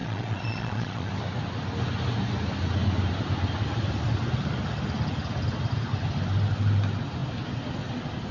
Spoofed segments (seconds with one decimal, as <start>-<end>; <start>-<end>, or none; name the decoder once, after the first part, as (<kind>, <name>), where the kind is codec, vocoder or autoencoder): 0.0-1.1 (vocoder, Vocos)